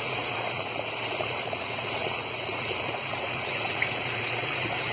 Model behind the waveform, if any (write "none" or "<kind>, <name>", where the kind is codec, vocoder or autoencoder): vocoder, Vocos